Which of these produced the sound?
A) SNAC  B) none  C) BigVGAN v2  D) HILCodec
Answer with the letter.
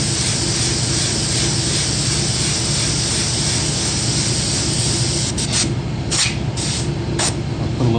B